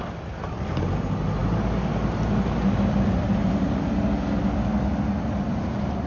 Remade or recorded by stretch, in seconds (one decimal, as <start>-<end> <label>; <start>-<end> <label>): 0.0-6.1 recorded